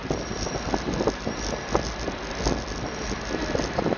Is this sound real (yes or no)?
yes